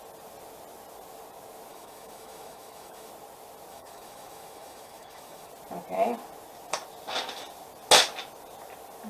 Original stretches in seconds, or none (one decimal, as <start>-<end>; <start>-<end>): 0.0-1.7; 3.1-3.7; 5.5-9.1